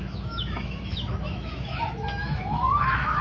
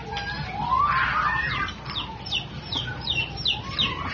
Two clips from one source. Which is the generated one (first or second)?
first